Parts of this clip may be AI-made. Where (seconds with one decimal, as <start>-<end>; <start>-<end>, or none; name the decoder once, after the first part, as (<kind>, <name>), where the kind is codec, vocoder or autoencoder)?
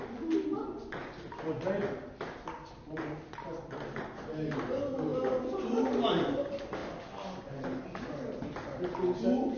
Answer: none